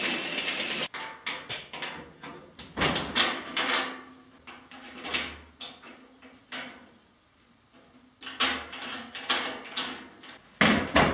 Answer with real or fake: real